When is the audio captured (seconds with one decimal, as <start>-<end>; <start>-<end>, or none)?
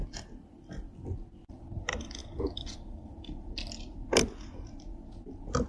0.0-1.5